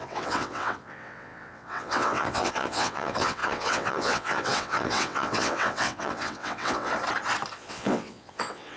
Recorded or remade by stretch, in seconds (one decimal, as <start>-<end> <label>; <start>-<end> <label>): 0.0-6.9 remade; 6.9-7.5 recorded; 7.5-8.8 remade